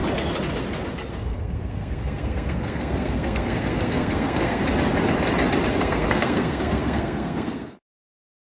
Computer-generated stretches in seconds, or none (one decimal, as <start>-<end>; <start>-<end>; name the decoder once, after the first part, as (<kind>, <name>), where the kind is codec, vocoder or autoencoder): 1.1-4.6 (codec, SNAC); 5.7-8.5